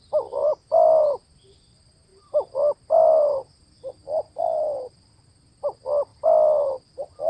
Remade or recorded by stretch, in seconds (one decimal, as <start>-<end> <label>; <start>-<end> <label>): 0.0-0.4 recorded; 0.4-1.0 remade; 1.0-6.1 recorded; 6.1-7.3 remade